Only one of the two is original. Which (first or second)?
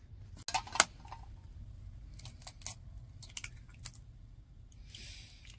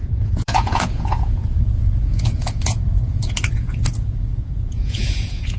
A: first